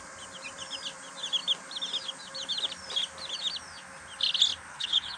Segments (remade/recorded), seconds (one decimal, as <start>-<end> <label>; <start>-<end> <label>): 0.0-4.7 recorded; 4.7-5.2 remade